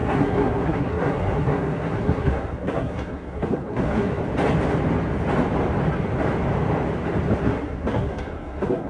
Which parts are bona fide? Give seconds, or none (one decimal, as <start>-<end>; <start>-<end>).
4.2-7.4